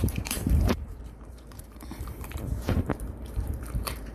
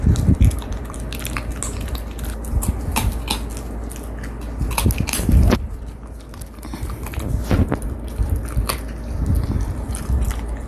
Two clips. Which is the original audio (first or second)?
second